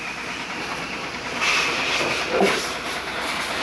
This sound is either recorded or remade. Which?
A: remade